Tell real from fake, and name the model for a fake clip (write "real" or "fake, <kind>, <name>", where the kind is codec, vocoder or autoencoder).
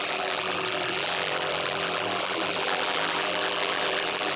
fake, vocoder, BigVGAN v2